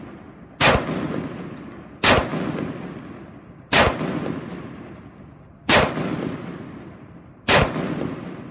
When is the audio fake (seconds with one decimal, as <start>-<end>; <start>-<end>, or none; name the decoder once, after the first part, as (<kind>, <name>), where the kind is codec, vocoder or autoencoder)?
4.5-7.6 (vocoder, BigVGAN v2)

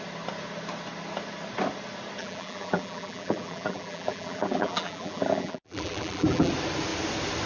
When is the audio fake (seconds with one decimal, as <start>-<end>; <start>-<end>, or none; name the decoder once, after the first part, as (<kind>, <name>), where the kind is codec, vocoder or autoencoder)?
2.2-6.5 (vocoder, BigVGAN v2)